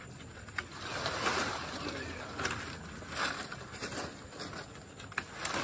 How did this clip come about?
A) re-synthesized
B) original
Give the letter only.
B